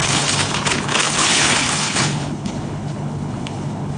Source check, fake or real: fake